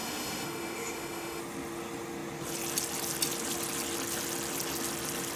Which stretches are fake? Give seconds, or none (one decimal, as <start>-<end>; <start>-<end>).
0.0-1.4

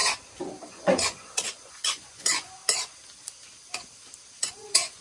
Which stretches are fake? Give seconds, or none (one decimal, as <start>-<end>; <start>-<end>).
0.7-2.6; 4.4-5.0

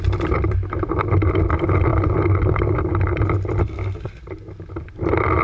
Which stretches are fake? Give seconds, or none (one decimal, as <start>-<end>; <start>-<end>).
3.6-4.2

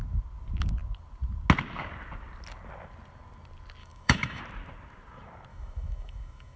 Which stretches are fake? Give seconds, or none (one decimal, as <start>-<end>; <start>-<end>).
3.8-4.4; 5.5-6.6

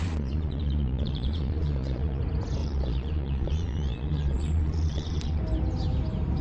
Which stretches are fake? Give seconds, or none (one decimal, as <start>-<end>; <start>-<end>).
0.0-2.2; 2.6-5.4